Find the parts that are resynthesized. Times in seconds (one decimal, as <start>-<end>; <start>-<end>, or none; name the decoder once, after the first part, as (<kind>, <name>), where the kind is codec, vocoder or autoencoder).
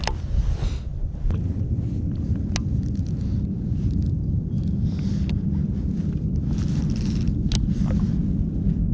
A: none